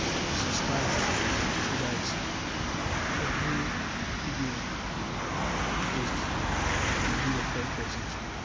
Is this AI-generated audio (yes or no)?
no